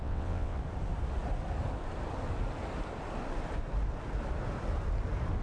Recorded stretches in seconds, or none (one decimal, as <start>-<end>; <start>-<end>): 0.6-5.4